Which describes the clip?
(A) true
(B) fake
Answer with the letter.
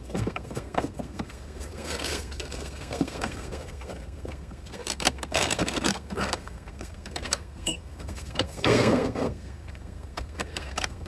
B